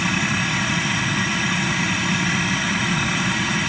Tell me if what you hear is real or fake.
real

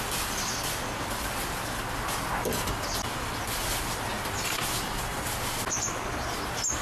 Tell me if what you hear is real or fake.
real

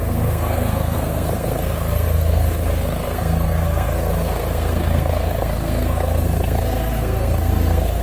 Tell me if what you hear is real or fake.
fake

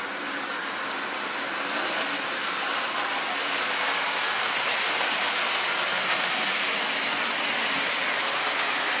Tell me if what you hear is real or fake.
real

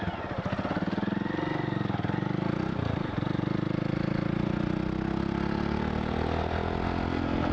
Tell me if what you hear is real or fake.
real